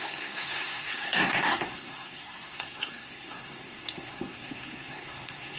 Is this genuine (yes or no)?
no